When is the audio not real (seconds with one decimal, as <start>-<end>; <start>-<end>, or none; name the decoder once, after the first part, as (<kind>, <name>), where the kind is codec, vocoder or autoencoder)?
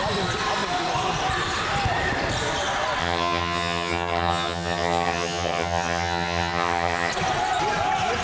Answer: 3.0-7.1 (vocoder, HiFi-GAN)